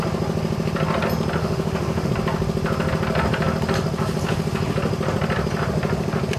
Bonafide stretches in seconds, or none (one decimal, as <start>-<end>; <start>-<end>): 0.0-1.4; 2.1-6.4